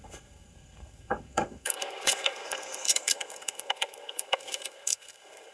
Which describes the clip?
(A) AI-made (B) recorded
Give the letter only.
A